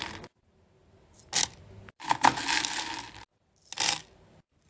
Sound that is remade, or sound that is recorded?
recorded